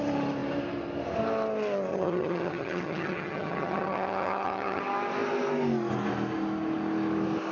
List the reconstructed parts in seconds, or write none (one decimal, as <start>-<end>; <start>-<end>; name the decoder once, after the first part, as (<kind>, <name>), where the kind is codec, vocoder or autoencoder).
1.9-4.8 (vocoder, HiFi-GAN)